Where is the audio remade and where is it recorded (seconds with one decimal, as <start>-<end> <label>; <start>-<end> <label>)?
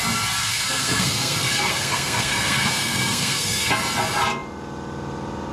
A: 0.0-0.4 recorded; 0.4-3.7 remade; 3.7-5.5 recorded